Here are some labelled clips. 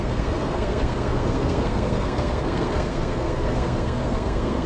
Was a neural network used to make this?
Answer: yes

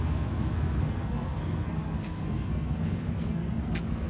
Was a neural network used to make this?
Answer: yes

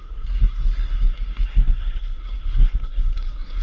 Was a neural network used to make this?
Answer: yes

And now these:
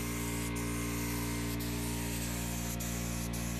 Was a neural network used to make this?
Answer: no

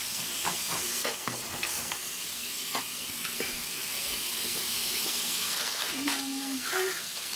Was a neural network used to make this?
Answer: yes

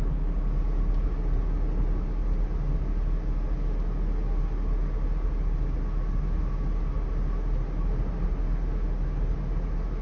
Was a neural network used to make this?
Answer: no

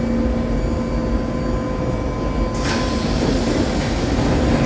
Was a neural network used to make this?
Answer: no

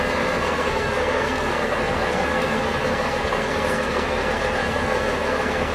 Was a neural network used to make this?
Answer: yes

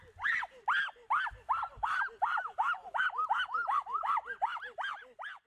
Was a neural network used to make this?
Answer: no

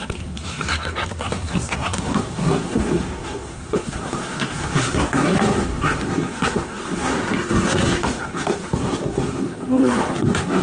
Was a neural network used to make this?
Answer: yes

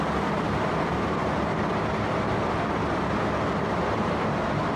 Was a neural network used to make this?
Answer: no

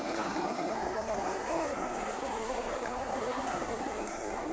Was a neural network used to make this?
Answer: yes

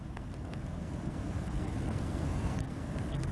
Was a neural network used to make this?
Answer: yes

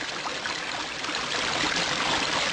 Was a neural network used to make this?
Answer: no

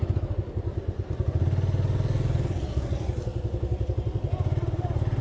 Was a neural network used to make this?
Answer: no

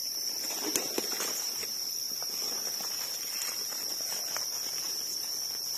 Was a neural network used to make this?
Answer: no